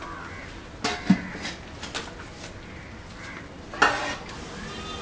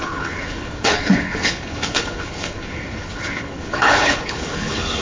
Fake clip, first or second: second